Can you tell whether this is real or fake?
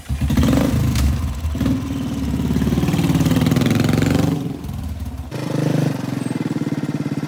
fake